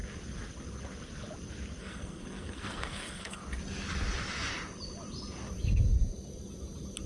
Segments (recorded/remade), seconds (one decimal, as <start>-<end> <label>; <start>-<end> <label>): 0.0-1.8 recorded; 1.8-3.4 remade; 3.4-7.1 recorded